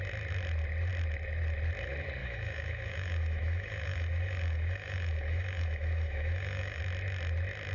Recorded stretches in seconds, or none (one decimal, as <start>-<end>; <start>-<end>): 0.0-2.2; 6.8-7.7